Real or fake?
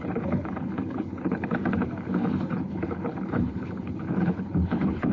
fake